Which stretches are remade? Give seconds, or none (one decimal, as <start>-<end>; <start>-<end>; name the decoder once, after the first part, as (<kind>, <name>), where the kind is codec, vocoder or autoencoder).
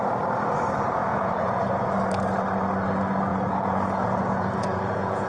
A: 1.0-1.6 (vocoder, Vocos); 3.3-5.3